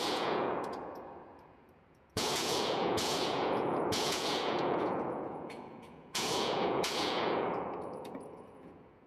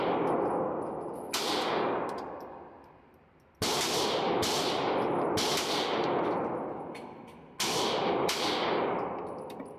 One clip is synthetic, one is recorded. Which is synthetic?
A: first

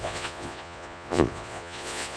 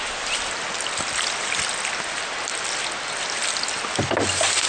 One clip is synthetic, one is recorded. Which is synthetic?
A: first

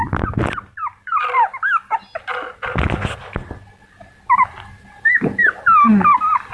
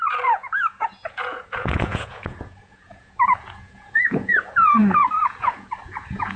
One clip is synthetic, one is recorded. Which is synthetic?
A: second